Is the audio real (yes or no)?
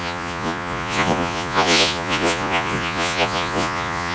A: no